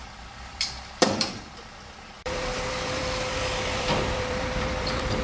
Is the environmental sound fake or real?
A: fake